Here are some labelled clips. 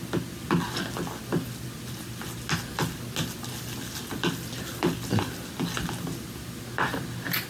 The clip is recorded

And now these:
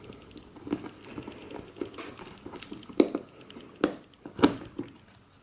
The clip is recorded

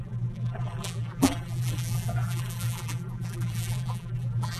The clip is remade